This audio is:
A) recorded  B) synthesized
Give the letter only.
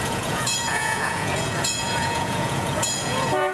B